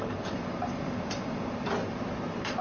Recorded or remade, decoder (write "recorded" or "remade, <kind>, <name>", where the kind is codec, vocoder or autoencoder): remade, vocoder, BigVGAN v2